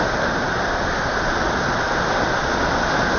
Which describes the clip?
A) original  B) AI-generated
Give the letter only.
A